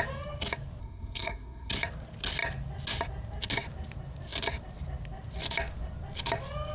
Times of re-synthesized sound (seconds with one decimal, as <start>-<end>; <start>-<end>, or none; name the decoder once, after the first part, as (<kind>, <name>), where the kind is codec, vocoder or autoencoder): 0.8-1.7 (codec, SNAC)